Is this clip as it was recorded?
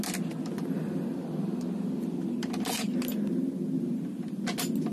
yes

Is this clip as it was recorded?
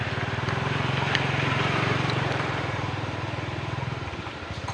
no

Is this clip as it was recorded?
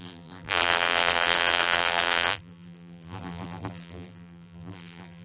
no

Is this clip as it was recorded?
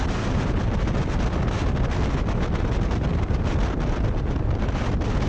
yes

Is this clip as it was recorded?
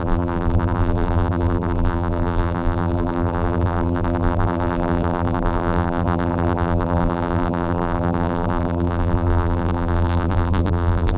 no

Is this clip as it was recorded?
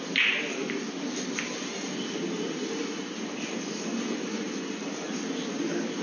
yes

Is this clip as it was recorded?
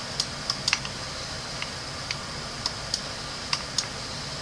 yes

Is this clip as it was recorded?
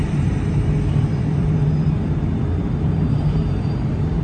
no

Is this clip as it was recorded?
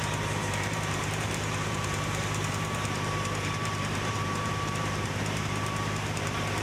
no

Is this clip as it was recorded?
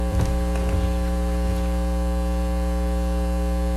no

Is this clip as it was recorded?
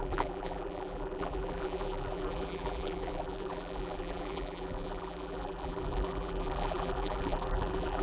no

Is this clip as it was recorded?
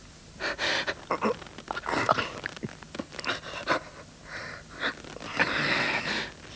yes